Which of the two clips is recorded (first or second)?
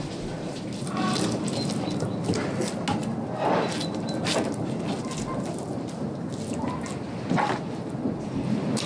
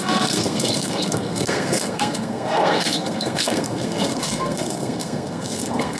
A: first